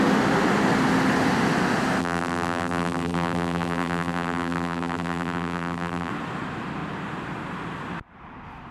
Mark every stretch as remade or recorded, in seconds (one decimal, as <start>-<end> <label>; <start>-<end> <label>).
0.0-2.0 recorded; 2.0-6.1 remade; 6.1-8.7 recorded